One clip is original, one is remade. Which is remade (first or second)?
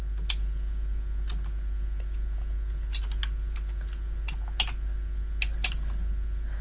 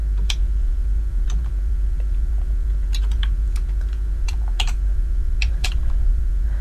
second